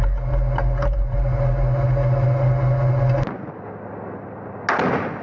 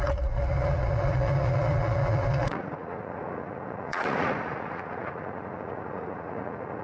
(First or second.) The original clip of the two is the first